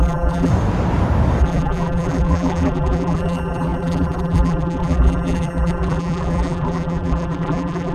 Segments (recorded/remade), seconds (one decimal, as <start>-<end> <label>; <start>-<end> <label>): 0.0-0.5 remade; 0.5-1.4 recorded; 1.4-7.9 remade